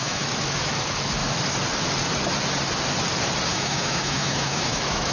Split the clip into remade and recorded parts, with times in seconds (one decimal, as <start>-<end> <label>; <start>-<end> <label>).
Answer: 0.0-1.2 remade; 1.2-3.5 recorded; 3.5-5.1 remade